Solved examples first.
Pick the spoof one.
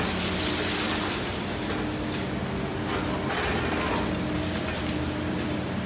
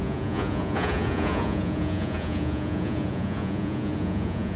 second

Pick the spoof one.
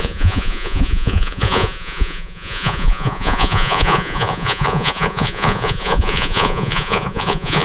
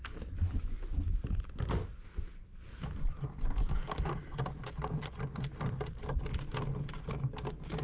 first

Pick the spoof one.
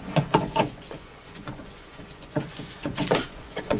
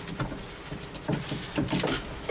first